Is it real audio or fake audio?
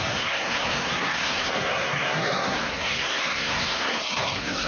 fake